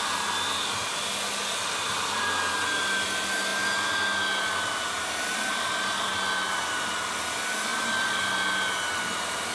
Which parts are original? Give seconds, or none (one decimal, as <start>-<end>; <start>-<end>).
0.0-9.5

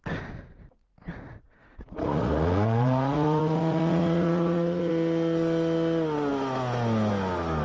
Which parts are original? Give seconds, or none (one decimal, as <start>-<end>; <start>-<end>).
0.0-0.8; 4.9-7.6

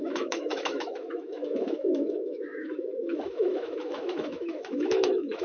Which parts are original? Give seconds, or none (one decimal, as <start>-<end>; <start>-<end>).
none

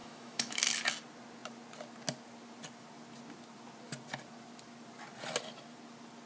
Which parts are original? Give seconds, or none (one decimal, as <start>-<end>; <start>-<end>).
0.7-6.3

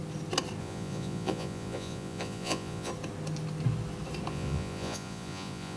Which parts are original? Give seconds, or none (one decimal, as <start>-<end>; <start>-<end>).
0.0-0.6; 2.9-4.3

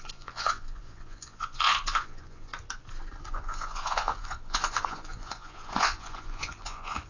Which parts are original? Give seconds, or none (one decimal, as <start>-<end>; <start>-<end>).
2.5-3.3

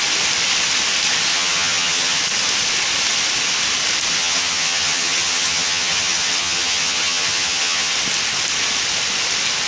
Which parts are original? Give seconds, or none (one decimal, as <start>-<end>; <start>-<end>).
0.0-1.3; 2.2-4.1; 7.9-9.7